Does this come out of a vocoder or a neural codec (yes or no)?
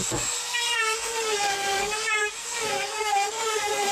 yes